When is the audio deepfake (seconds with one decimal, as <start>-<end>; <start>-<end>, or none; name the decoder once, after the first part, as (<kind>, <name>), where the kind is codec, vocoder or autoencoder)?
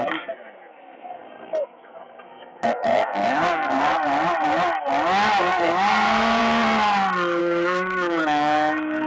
0.0-3.9 (codec, SNAC); 5.4-6.4; 7.4-9.1